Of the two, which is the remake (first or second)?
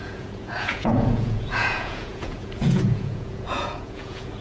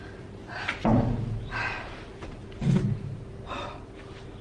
first